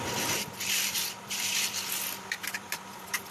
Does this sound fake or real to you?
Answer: fake